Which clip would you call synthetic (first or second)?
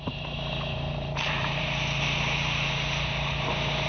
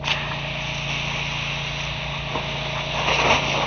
first